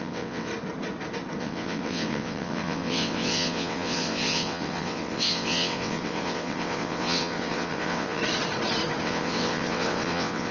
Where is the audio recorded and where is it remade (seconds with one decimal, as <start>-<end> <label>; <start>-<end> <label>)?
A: 0.0-0.5 remade; 0.5-1.4 recorded; 1.4-8.2 remade; 8.2-9.0 recorded; 9.0-10.5 remade